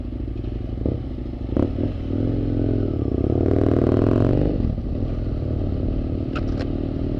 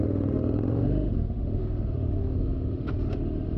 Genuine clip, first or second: first